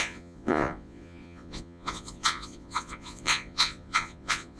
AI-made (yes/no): yes